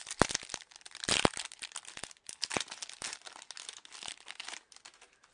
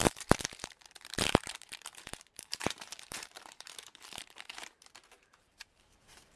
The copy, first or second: second